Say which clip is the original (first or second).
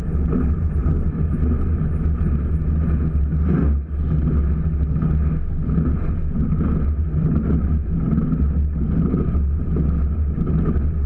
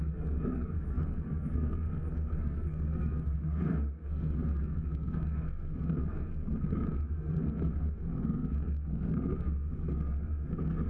first